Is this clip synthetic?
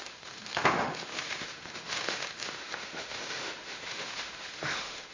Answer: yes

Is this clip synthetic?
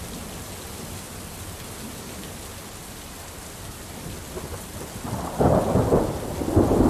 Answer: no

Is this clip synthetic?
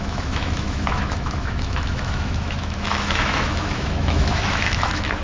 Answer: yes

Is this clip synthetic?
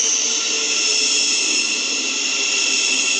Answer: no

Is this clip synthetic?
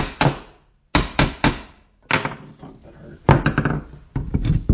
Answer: no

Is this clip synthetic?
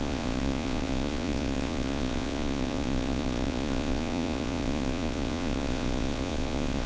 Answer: yes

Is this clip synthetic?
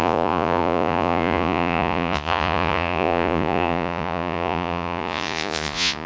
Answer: yes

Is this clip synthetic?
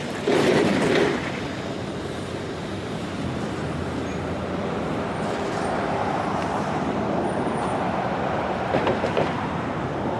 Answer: yes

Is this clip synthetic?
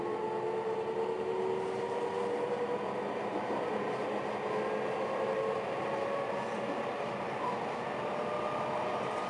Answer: no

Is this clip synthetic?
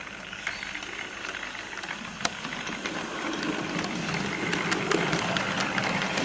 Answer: no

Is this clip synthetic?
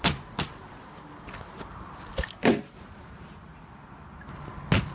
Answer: no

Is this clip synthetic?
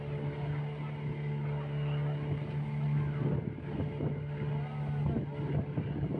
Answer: no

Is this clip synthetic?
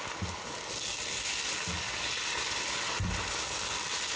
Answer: no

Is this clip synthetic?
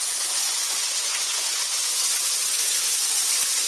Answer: yes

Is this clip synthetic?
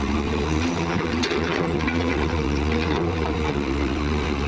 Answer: yes